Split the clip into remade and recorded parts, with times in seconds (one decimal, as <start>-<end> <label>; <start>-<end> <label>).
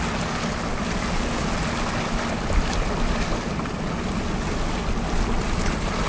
0.0-0.7 recorded; 0.7-1.2 remade; 1.2-6.1 recorded